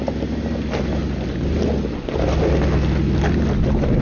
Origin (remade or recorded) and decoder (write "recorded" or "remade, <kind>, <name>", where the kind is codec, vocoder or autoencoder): recorded